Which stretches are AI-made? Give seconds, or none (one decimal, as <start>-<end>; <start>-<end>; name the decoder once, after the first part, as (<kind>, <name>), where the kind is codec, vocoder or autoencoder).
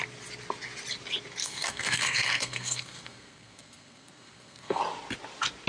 1.4-4.8 (codec, SNAC)